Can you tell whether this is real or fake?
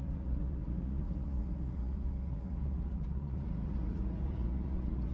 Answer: fake